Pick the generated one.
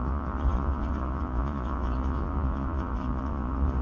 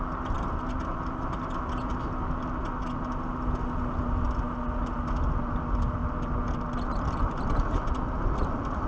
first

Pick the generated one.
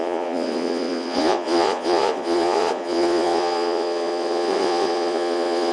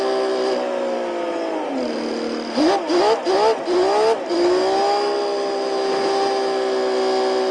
first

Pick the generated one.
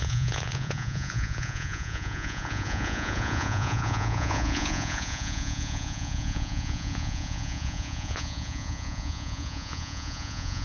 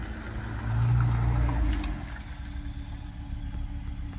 first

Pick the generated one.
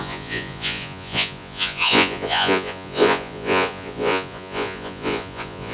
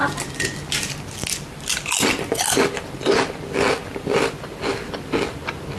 first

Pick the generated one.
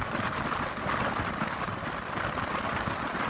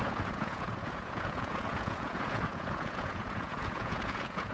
second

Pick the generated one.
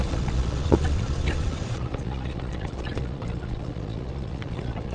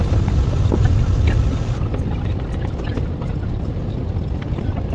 first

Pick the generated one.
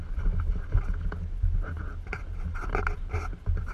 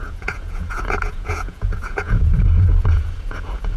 second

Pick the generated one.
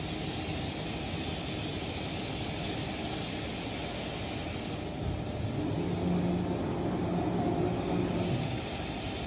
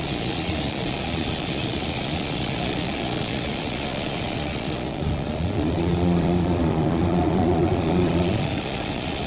second